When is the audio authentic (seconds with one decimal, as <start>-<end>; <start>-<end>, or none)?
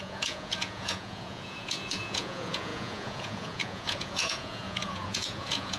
none